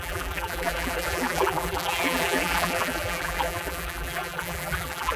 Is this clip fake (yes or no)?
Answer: yes